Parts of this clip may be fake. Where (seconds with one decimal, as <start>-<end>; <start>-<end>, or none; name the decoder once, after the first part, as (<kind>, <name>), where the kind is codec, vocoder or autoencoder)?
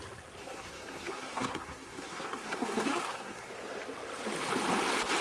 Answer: 0.4-3.5 (codec, SNAC)